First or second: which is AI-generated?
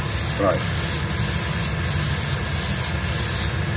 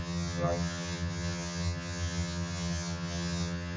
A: second